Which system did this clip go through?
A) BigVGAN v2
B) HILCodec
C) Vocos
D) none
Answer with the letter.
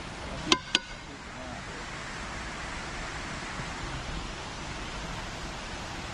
D